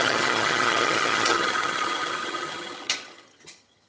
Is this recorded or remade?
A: remade